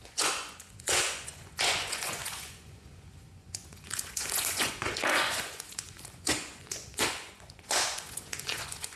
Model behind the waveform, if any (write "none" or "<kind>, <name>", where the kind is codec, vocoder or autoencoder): vocoder, Vocos